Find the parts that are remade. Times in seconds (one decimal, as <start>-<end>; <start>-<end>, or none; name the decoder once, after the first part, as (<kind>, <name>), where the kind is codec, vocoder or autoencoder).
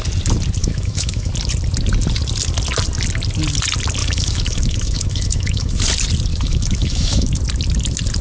0.6-1.3 (autoencoder, DAC-VAE); 4.0-5.8; 6.3-7.3